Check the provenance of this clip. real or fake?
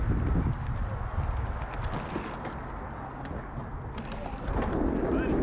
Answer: real